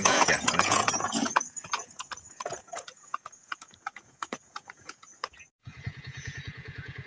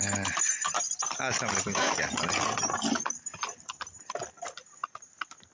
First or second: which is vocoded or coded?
first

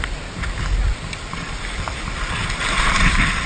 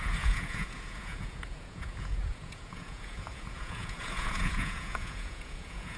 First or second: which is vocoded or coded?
second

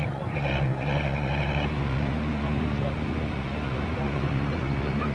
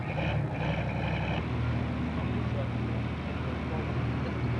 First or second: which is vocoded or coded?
first